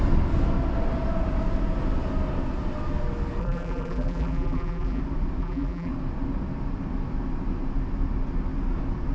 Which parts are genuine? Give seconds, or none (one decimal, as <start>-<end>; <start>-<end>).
0.0-3.4; 5.0-5.4; 5.9-9.1